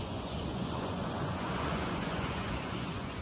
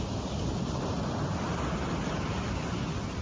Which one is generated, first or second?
first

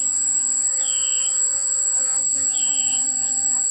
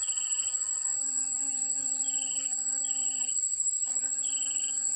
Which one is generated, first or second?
first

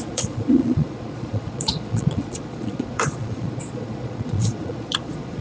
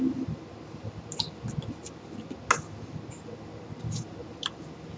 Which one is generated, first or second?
first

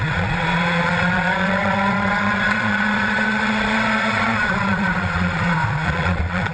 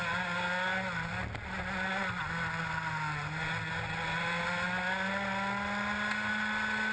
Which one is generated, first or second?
first